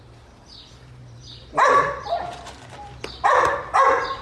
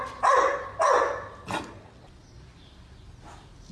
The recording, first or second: second